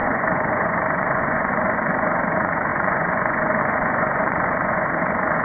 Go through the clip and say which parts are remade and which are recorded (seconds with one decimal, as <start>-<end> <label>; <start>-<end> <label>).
0.0-5.4 remade